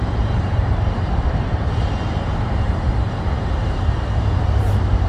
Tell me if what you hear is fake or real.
fake